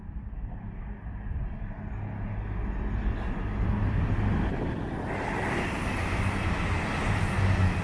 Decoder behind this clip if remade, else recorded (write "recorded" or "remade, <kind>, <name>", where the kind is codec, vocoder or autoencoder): recorded